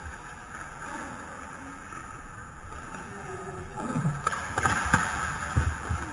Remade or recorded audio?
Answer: remade